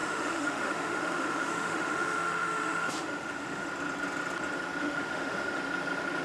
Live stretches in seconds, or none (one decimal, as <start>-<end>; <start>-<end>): 3.7-4.8; 5.6-6.2